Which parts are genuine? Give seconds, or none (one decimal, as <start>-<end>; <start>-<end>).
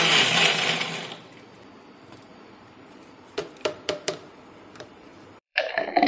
0.0-2.3